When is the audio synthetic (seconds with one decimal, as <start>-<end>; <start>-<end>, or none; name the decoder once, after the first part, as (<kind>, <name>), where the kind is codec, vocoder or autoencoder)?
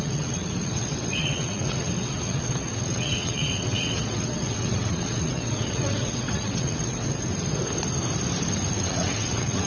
0.0-7.3 (vocoder, WaveNeXt); 8.7-9.7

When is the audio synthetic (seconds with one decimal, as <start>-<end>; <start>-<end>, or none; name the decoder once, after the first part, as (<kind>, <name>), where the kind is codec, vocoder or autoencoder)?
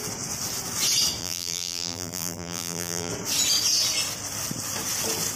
1.2-3.1 (vocoder, BigVGAN v2)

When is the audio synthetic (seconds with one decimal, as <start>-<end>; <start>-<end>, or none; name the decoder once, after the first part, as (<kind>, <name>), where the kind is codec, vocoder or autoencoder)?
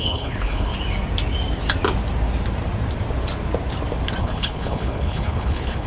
0.0-0.7 (codec, HILCodec); 4.2-5.9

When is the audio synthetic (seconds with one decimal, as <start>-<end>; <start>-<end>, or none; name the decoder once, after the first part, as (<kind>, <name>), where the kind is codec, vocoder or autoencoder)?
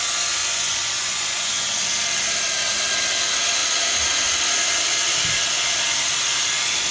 0.4-1.8 (vocoder, Vocos)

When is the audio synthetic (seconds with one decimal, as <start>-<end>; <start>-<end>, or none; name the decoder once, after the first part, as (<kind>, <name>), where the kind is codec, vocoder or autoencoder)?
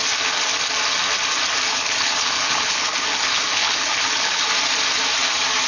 1.7-4.5 (codec, HILCodec)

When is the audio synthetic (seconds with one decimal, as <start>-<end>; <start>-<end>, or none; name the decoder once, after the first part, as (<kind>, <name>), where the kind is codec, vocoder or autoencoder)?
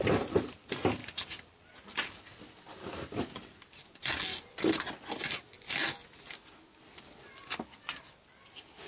none